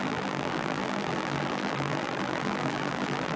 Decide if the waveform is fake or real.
fake